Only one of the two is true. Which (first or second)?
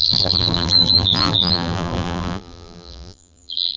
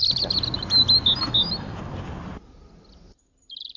second